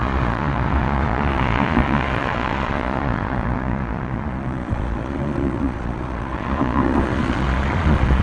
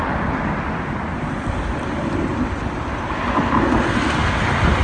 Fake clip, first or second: first